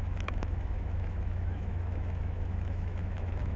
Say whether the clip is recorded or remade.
remade